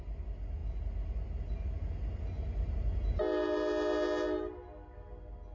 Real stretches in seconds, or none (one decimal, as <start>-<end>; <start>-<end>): 0.0-5.5